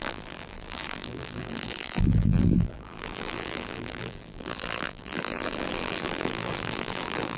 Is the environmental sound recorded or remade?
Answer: remade